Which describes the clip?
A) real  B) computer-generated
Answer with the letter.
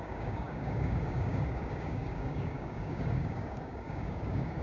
B